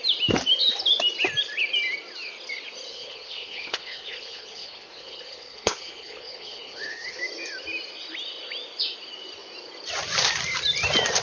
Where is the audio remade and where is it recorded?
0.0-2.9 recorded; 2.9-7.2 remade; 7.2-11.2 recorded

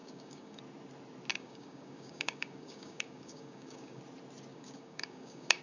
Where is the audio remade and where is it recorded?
0.0-0.6 remade; 0.6-1.3 recorded; 1.3-4.0 remade; 4.0-4.5 recorded; 4.5-5.6 remade

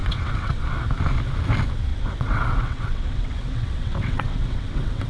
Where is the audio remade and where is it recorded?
0.0-0.6 remade; 0.6-1.9 recorded; 1.9-5.1 remade